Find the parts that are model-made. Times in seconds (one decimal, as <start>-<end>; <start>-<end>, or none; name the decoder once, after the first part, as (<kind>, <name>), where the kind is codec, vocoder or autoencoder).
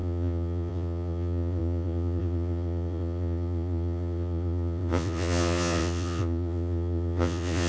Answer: 0.0-7.7 (vocoder, Vocos)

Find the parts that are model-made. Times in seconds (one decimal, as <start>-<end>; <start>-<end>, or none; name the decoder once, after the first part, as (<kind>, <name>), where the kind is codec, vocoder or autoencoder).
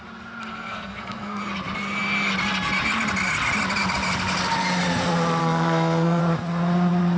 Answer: 0.5-1.4 (codec, SNAC); 5.4-6.2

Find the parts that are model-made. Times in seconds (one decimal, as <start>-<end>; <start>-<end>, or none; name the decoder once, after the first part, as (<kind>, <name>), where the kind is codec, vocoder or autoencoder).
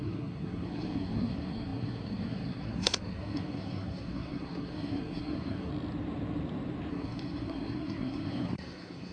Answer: 0.0-5.7 (codec, SNAC); 6.9-9.1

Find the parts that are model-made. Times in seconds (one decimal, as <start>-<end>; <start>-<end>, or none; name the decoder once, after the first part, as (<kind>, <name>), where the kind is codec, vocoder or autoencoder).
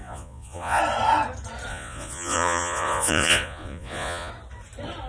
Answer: 0.0-0.8 (vocoder, Vocos); 1.7-4.3